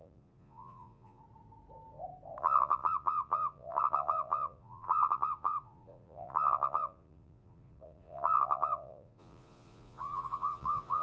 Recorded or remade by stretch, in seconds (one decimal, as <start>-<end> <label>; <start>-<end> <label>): 0.0-1.2 remade; 1.2-2.4 recorded; 2.4-11.0 remade